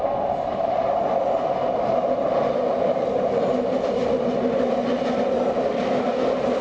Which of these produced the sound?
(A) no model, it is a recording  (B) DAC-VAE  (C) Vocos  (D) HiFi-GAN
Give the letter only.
A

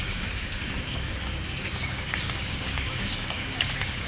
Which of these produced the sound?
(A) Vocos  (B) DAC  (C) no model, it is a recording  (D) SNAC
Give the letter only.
B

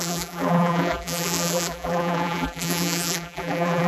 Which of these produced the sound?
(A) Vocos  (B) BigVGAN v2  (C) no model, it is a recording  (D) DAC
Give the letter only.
B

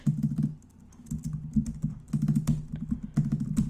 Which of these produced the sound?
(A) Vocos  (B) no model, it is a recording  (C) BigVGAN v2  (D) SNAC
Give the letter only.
B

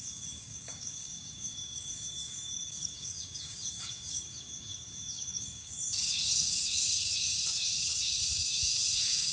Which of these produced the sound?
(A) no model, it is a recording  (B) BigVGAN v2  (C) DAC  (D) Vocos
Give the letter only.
C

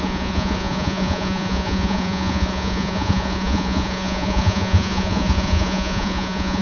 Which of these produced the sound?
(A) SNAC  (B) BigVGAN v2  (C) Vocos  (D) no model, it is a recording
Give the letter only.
C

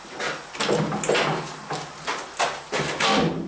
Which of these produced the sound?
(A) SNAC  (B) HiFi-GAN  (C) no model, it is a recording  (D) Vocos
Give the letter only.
C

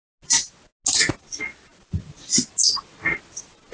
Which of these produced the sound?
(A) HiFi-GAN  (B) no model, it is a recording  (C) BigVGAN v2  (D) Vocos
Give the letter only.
B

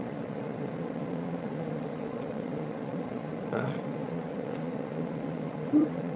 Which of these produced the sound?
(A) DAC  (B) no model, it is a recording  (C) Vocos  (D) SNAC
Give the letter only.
C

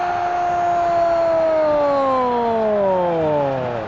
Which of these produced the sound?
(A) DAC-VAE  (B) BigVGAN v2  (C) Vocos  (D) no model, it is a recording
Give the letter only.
D